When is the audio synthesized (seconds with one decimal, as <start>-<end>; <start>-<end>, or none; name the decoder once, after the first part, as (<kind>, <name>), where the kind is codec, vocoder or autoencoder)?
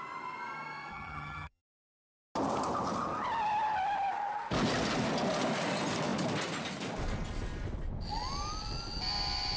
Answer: 0.9-1.6 (vocoder, HiFi-GAN)